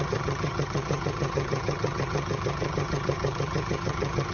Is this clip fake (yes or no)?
yes